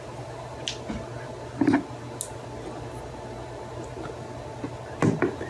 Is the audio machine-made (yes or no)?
no